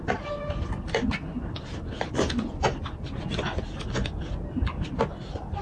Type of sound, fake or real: real